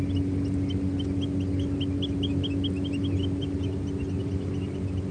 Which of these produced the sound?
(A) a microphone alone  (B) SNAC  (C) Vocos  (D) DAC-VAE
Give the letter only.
A